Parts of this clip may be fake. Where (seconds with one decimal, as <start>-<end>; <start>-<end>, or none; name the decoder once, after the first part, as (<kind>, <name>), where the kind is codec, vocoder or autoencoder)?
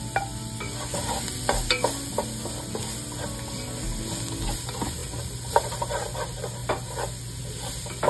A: none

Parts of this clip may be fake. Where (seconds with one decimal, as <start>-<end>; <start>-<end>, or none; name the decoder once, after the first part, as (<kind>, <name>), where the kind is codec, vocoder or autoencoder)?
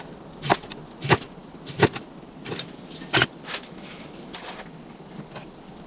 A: none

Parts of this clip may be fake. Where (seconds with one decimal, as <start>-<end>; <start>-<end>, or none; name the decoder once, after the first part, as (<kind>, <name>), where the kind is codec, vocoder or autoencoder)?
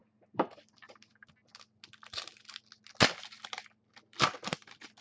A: none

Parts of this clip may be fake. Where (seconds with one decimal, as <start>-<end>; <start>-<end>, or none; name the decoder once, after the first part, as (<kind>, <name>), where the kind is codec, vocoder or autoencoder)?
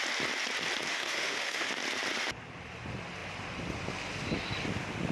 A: 0.9-1.7 (autoencoder, DAC-VAE)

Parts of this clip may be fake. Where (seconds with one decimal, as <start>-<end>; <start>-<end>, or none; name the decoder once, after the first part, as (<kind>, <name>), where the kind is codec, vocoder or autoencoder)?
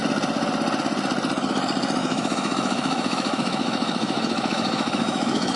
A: 2.0-5.6 (autoencoder, DAC-VAE)